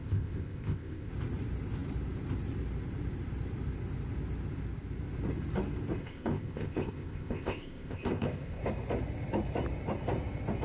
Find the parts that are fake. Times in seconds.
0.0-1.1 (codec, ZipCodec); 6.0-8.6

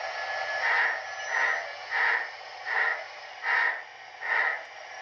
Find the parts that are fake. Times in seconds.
none

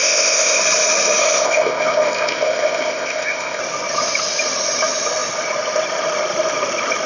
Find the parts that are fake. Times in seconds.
0.0-0.6 (codec, ZipCodec); 1.2-3.6

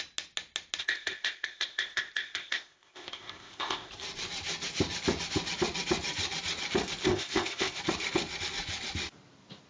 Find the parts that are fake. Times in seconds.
0.8-3.9 (codec, ZipCodec); 7.0-7.8